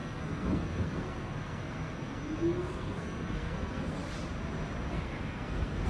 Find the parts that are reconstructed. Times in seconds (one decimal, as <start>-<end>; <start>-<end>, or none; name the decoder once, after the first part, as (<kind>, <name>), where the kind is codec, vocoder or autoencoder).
0.0-4.0 (codec, SNAC); 4.9-5.9